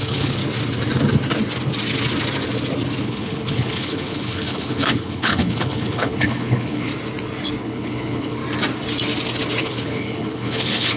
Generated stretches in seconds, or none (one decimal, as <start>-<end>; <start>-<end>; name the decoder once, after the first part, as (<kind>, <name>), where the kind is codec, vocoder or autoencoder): 0.0-0.4 (codec, HILCodec); 3.0-6.9; 7.6-8.4; 9.6-11.0